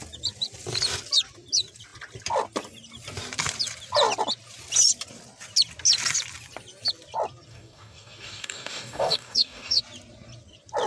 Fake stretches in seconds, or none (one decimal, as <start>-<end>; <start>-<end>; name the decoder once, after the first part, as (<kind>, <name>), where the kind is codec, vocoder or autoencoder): 7.5-9.8 (codec, DAC)